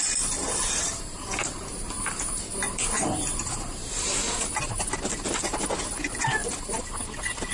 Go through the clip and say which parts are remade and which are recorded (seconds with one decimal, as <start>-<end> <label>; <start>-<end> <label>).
0.0-0.4 recorded; 0.4-4.9 remade; 4.9-6.4 recorded; 6.4-7.0 remade; 7.0-7.5 recorded